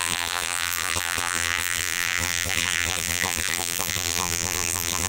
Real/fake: fake